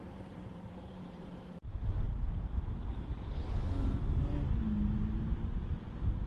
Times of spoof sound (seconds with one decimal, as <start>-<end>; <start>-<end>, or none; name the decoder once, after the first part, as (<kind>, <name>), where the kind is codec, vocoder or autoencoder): 0.0-3.4 (vocoder, BigVGAN v2)